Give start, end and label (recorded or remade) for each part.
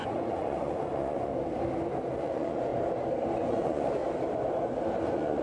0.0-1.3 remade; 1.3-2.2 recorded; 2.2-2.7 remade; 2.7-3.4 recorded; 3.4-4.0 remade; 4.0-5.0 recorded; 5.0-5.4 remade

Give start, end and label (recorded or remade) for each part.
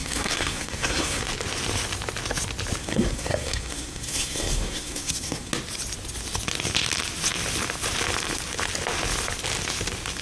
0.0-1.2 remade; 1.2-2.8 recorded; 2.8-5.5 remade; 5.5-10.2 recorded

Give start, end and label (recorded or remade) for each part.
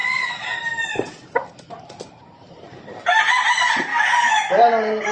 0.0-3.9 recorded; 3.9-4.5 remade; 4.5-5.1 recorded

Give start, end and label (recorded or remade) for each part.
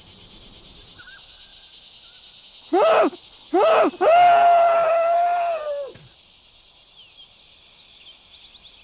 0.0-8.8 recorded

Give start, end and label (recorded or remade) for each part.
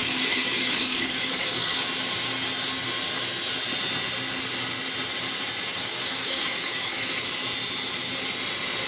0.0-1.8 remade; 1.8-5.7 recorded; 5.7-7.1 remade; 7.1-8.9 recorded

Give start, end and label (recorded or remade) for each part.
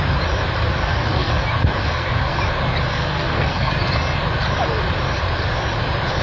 0.0-0.8 recorded; 0.8-1.4 remade; 1.4-1.8 recorded; 1.8-2.4 remade; 2.4-2.9 recorded; 2.9-3.7 remade; 3.7-6.2 recorded